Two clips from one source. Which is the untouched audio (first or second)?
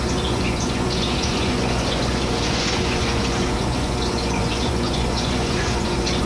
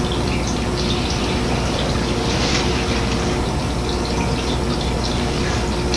second